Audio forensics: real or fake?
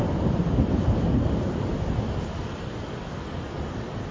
real